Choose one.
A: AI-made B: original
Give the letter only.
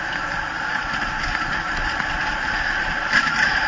B